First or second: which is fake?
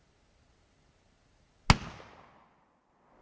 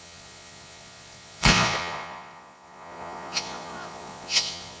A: second